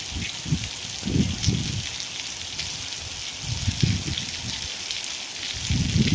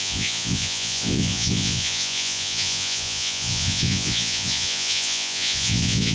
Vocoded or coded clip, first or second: second